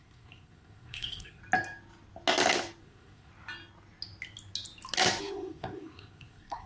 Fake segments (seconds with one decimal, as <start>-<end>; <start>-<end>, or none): 0.0-1.4; 2.8-3.3; 5.2-6.7